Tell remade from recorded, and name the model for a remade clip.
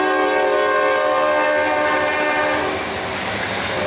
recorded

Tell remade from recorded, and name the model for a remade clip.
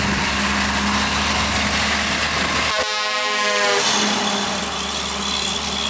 recorded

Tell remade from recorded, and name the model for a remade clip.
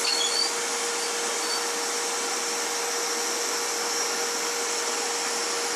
recorded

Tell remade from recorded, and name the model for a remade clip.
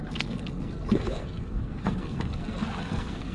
remade, codec, SNAC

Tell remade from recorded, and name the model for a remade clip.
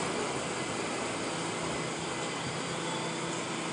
recorded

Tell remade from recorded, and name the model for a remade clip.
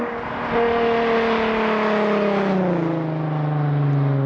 recorded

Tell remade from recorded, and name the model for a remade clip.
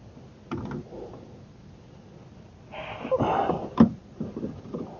recorded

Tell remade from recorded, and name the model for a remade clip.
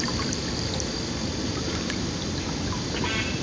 recorded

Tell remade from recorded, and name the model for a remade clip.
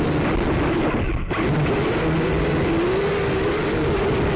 recorded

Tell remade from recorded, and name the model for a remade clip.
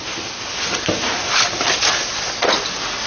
recorded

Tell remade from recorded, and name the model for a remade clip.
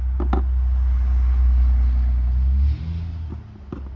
recorded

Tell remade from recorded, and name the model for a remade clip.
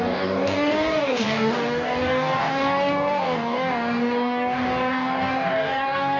remade, codec, DAC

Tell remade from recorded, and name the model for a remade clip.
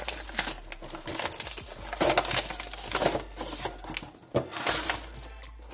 recorded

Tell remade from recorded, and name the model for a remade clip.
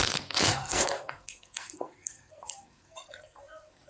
remade, codec, SNAC